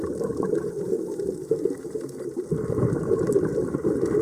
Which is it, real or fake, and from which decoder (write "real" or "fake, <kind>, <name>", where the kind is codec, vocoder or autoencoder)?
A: real